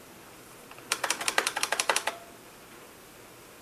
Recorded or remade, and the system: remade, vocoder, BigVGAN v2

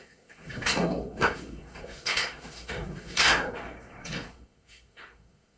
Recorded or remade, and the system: remade, codec, SNAC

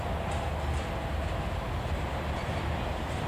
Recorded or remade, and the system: recorded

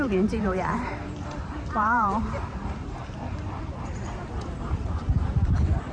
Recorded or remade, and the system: remade, vocoder, BigVGAN v2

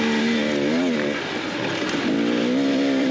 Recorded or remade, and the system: recorded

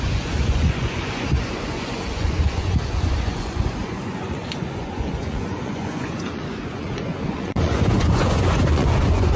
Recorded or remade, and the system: remade, vocoder, Vocos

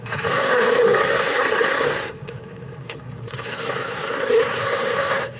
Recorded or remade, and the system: remade, codec, SNAC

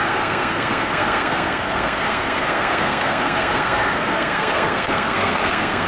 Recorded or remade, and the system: remade, codec, SNAC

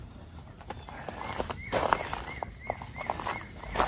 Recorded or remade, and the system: recorded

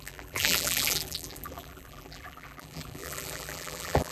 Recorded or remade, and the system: remade, vocoder, BigVGAN v2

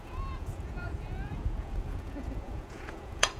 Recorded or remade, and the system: remade, vocoder, Vocos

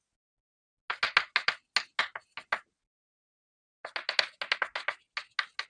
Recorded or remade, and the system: recorded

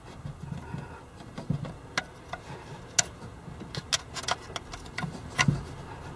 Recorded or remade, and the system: recorded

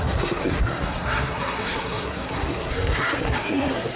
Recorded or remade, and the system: remade, codec, SNAC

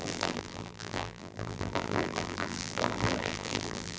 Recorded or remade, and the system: remade, vocoder, BigVGAN v2